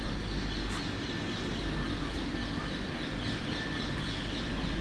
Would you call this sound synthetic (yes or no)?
no